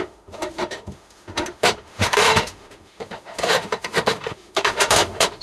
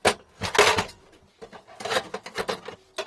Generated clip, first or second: first